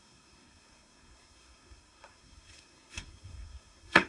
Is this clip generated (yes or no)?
yes